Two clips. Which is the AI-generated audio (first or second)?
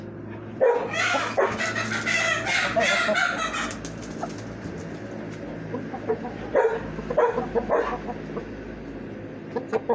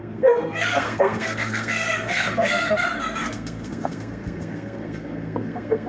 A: second